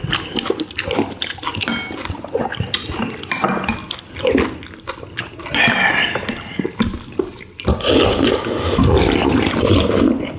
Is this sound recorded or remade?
recorded